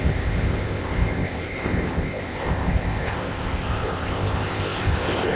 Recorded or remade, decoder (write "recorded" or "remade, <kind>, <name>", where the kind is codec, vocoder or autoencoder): remade, codec, ZipCodec